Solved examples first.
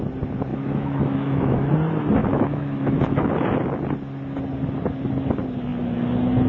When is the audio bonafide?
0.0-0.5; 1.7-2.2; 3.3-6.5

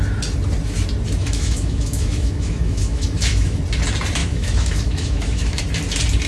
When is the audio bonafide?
0.0-1.2; 3.6-4.2; 5.6-6.3

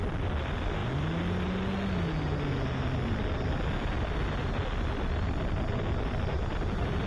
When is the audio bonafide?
0.0-7.1